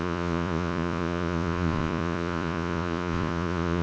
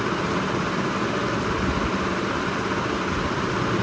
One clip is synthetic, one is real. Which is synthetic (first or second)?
first